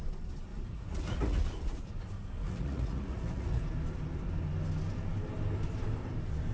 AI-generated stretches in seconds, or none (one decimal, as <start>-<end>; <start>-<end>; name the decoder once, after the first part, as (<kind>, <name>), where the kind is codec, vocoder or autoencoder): 0.5-1.8 (vocoder, Vocos); 2.4-3.6